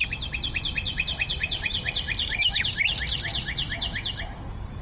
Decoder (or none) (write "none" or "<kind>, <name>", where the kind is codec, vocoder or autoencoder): none